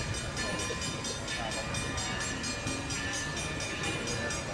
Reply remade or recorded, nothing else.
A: recorded